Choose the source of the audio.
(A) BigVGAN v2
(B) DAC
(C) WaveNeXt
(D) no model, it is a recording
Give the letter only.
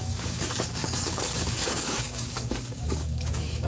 B